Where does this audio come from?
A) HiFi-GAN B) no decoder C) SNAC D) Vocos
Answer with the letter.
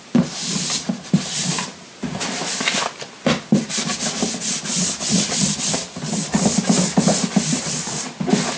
B